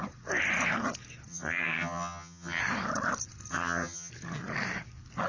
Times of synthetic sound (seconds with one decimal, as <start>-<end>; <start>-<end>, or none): 1.3-2.6; 3.5-4.1